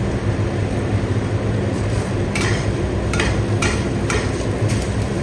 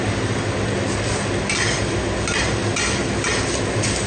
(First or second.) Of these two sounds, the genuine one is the second